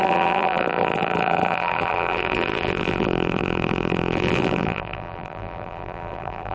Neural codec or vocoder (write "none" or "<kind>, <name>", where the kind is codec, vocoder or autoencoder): vocoder, BigVGAN v2